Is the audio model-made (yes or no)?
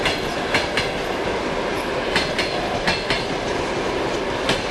no